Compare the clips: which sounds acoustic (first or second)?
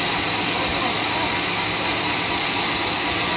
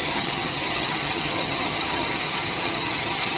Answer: first